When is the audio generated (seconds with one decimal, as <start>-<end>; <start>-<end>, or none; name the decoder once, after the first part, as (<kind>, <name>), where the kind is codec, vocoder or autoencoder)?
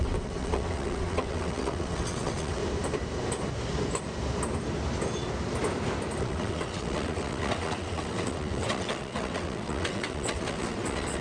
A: 0.0-2.6 (vocoder, WaveNeXt); 6.2-11.2